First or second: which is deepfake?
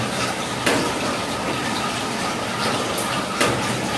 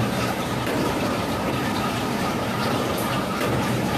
second